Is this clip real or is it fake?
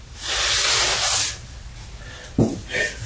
real